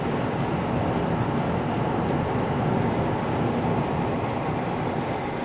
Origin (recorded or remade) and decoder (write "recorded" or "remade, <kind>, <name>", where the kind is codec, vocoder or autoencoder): recorded